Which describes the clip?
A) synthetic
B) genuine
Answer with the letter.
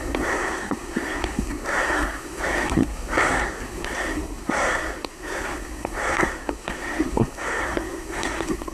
A